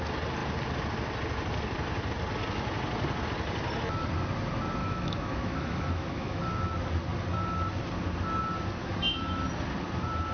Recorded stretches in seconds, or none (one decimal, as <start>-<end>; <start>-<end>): 0.0-4.8; 6.4-8.8; 9.4-10.3